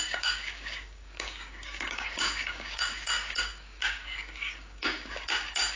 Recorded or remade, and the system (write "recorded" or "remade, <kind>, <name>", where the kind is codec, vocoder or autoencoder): remade, codec, DAC